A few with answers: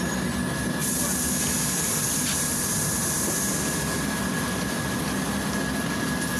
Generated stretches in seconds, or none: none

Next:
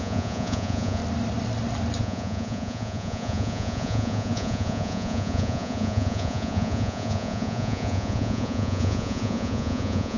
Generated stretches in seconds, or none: 0.0-1.0 (vocoder, Vocos); 2.0-10.2

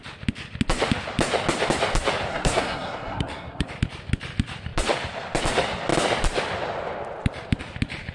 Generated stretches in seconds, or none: 2.3-3.7 (codec, SNAC)

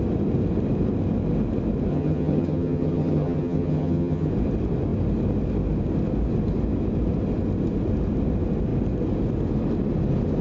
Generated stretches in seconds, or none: 1.9-4.3 (vocoder, HiFi-GAN)